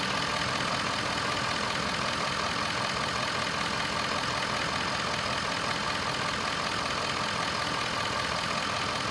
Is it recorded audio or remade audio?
recorded